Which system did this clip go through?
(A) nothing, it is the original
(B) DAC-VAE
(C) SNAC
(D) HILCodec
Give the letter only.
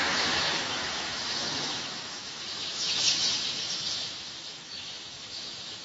B